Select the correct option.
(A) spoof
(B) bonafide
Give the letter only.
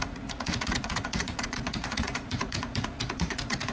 A